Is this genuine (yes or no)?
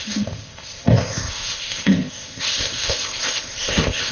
no